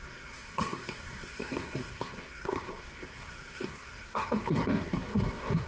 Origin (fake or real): fake